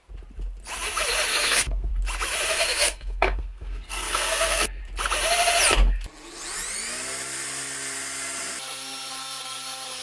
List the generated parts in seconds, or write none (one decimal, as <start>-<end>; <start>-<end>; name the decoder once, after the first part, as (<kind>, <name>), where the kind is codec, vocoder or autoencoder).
1.3-1.9 (codec, SNAC); 2.5-4.8